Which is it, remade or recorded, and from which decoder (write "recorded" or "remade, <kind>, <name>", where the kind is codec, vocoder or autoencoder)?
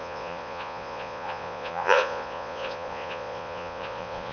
remade, vocoder, Vocos